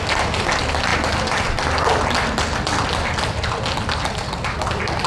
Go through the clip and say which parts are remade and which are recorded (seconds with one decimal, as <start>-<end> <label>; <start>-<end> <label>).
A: 0.0-5.1 recorded